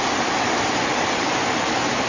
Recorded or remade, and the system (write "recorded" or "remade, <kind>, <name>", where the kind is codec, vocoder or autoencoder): remade, vocoder, BigVGAN v2